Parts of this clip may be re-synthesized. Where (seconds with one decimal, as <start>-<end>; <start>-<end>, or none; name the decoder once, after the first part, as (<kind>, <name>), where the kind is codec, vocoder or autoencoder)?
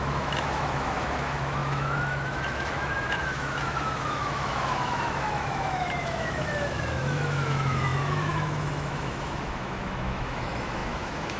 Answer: 0.0-11.4 (autoencoder, DAC-VAE)